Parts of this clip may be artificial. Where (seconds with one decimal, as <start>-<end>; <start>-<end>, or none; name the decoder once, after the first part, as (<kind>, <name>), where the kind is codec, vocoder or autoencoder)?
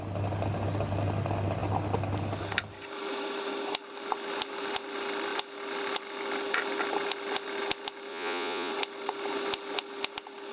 8.1-8.7 (vocoder, Vocos)